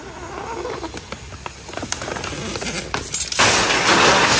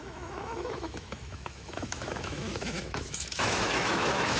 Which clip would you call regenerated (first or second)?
second